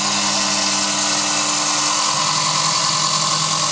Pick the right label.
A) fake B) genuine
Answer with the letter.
B